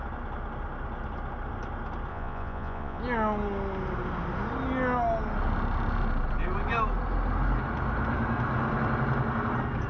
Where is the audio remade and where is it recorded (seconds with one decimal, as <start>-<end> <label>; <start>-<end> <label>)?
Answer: 0.0-2.1 recorded; 2.1-3.0 remade; 3.0-9.9 recorded